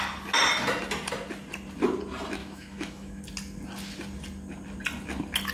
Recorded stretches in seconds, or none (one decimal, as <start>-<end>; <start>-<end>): 0.0-2.4; 3.2-5.5